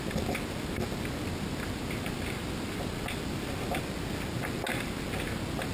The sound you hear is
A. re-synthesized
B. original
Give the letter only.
B